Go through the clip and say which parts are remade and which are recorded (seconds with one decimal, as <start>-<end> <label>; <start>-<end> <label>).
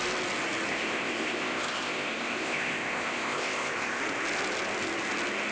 0.0-0.7 recorded; 0.7-4.0 remade; 4.0-5.5 recorded